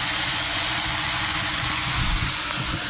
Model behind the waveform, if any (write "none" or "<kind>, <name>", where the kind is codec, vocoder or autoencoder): vocoder, Vocos